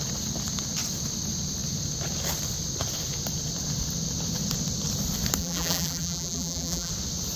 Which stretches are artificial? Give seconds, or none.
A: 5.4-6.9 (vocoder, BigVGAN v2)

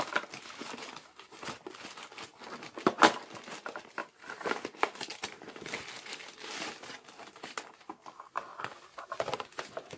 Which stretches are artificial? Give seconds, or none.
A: 0.6-1.7 (vocoder, BigVGAN v2); 5.1-7.9; 8.5-10.0

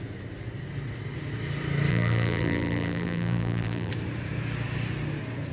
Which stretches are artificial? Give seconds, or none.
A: 1.9-3.9 (vocoder, BigVGAN v2)

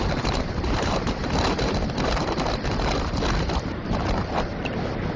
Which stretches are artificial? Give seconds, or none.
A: 0.0-1.2 (vocoder, BigVGAN v2); 3.4-4.5

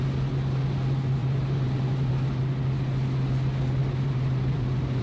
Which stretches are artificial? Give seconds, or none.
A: 1.2-2.1 (vocoder, BigVGAN v2); 3.8-5.0

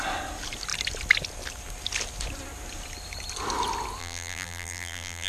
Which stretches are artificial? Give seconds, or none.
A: 4.0-5.3 (vocoder, BigVGAN v2)

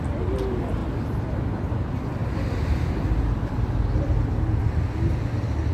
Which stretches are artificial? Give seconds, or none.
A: 2.2-4.6 (vocoder, BigVGAN v2)